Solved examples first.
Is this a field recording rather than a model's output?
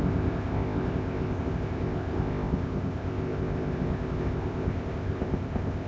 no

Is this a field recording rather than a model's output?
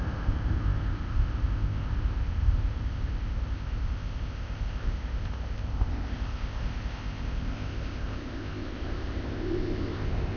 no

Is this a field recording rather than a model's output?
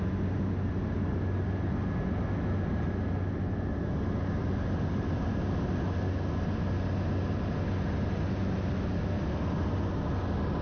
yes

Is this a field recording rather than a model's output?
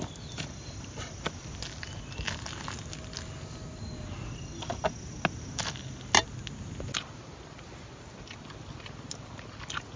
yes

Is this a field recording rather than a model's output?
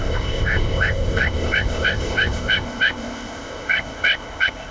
no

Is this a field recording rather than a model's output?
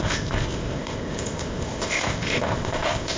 no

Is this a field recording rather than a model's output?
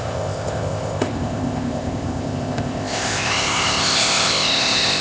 no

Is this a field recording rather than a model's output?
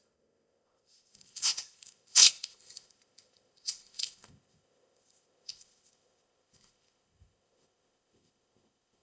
no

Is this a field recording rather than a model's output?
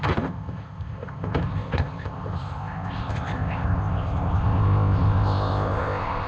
no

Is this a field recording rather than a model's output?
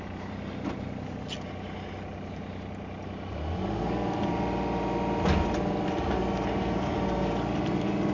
yes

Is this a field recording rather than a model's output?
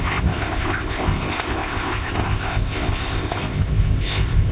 no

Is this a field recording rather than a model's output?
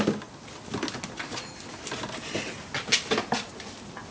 yes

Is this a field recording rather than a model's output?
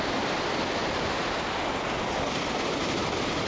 yes